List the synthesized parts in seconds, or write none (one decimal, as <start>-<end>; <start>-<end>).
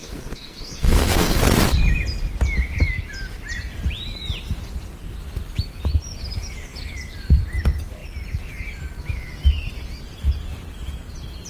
0.0-1.4